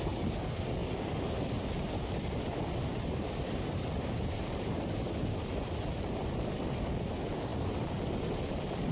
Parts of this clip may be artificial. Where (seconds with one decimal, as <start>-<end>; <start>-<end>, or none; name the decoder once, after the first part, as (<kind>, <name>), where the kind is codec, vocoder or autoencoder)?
2.9-4.9 (vocoder, BigVGAN v2)